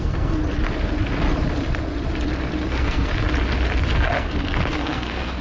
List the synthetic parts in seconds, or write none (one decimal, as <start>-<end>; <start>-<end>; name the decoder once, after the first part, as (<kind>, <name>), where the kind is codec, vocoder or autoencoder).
0.0-0.4 (codec, SNAC); 2.7-3.1; 3.9-5.4